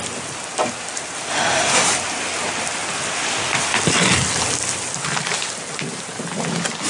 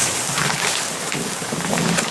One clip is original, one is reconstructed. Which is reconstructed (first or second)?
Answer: second